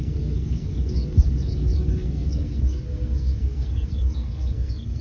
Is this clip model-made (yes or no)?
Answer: yes